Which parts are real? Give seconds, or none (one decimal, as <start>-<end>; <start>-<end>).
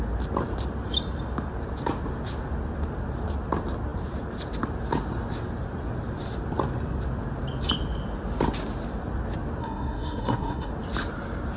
0.0-9.6; 10.7-11.6